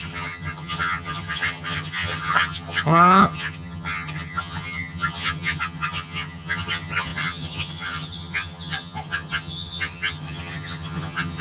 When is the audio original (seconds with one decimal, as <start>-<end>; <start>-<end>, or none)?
none